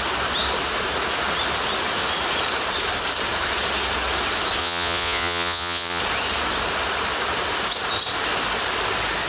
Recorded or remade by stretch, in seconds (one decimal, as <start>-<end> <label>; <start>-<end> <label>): 0.0-4.6 recorded; 4.6-6.0 remade; 6.0-9.3 recorded